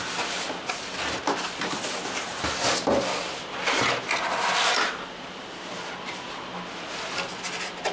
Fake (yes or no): no